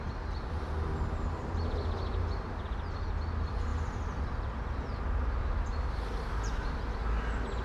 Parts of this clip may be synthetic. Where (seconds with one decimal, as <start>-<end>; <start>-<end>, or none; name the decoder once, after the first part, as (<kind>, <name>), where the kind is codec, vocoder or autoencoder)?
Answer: none